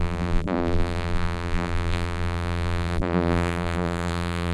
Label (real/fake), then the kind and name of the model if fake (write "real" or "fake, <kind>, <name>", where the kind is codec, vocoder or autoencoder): fake, vocoder, BigVGAN v2